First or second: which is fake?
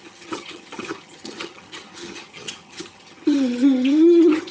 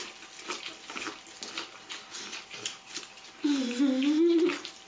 first